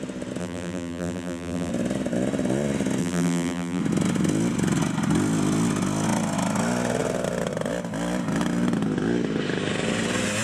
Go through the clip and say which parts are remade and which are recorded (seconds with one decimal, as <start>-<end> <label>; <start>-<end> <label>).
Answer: 0.0-0.4 recorded; 0.4-1.7 remade; 1.7-3.0 recorded; 3.0-3.8 remade; 3.8-10.4 recorded